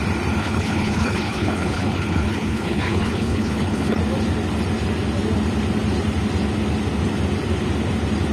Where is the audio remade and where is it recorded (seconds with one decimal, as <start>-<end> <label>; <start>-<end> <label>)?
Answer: 0.0-0.4 recorded; 0.4-4.0 remade; 4.0-8.3 recorded